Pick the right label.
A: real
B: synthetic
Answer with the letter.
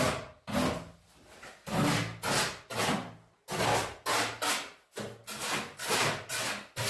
A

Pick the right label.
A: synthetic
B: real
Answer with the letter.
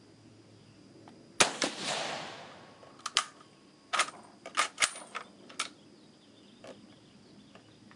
B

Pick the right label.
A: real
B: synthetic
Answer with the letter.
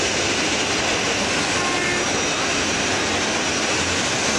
A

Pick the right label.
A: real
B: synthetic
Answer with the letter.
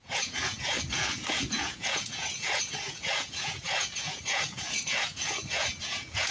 B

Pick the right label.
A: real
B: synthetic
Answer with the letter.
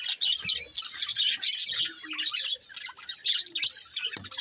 A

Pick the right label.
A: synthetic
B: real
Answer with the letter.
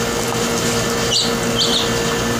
B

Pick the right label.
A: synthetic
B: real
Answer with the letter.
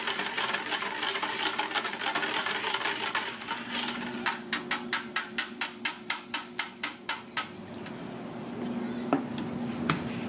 B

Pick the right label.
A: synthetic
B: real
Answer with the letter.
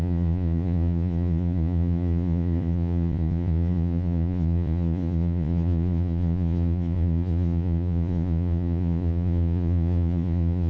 A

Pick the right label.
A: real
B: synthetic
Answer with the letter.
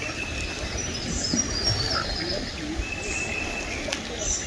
A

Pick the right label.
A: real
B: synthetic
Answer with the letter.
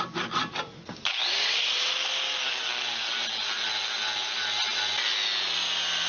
A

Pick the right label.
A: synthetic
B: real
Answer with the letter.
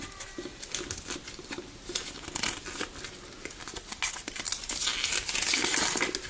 B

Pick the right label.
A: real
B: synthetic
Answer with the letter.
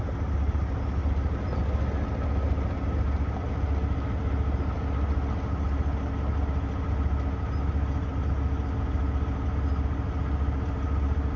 A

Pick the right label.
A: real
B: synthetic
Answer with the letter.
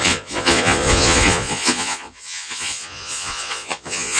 B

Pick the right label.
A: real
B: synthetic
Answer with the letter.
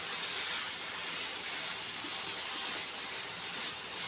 A